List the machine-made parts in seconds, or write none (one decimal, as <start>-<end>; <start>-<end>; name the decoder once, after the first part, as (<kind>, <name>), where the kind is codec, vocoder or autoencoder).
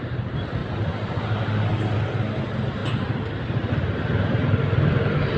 2.8-3.7 (vocoder, BigVGAN v2)